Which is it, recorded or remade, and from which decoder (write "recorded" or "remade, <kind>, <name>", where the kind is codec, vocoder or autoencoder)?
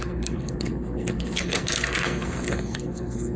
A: remade, codec, SNAC